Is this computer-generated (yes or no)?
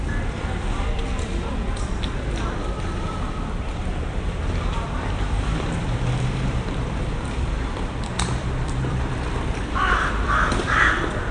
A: yes